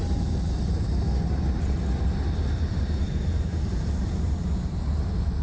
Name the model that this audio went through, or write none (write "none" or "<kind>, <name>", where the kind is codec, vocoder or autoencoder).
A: vocoder, BigVGAN v2